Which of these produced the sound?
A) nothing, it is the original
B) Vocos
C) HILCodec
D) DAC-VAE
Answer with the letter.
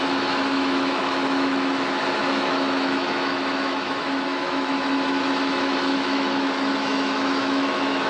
D